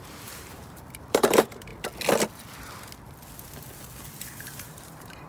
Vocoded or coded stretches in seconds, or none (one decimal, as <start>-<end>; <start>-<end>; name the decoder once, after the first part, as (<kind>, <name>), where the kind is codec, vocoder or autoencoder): 0.0-1.7 (vocoder, BigVGAN v2); 4.2-5.3